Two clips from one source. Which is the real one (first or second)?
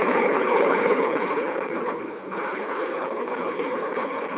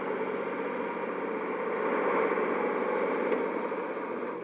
second